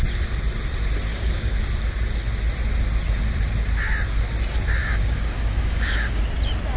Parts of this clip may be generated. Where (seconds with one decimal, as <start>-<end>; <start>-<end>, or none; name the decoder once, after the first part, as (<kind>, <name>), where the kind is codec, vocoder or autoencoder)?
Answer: 1.1-1.6 (codec, DAC); 4.8-6.2